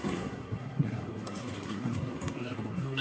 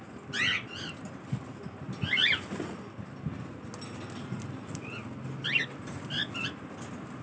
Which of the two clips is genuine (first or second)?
second